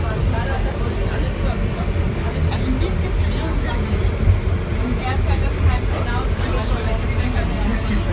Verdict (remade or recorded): recorded